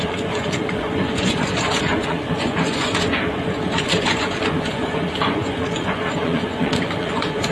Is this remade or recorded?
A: remade